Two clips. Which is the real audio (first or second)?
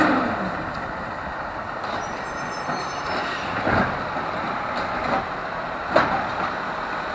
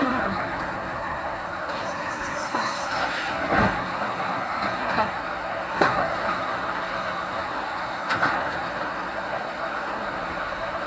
first